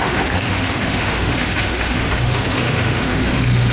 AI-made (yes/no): yes